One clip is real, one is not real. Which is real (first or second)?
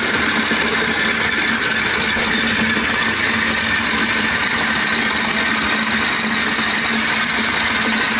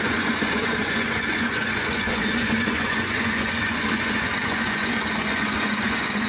first